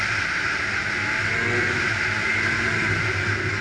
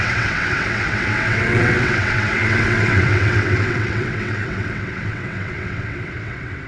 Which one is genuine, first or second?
first